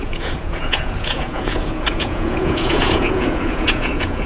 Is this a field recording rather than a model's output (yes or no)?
no